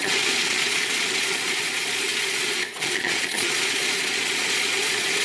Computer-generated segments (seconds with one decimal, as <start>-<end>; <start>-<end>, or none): 0.0-5.2